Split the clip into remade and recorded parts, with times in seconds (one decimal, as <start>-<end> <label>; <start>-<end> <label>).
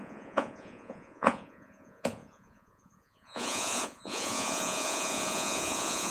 0.0-6.1 remade